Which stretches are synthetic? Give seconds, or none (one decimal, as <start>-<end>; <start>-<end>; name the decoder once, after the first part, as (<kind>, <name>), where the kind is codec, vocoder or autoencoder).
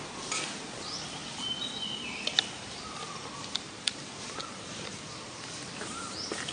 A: none